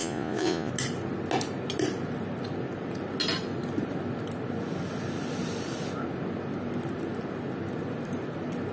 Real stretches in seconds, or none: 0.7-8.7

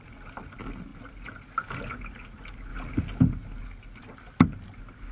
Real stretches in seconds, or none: 0.0-5.1

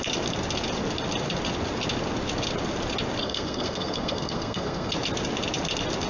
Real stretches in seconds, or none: 0.0-3.2; 4.9-6.1